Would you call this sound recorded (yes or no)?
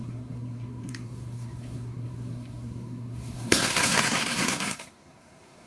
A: no